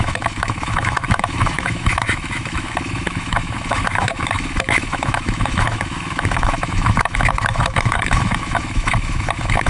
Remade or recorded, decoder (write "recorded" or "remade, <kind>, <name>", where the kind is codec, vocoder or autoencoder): remade, autoencoder, DAC-VAE